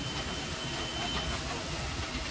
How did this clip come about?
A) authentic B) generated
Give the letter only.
A